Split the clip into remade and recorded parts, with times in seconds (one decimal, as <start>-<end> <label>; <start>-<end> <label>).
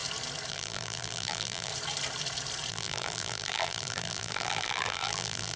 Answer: 0.0-0.5 recorded; 0.5-1.7 remade; 1.7-2.7 recorded; 2.7-5.6 remade